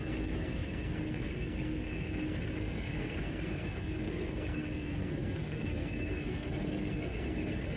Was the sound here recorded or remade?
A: remade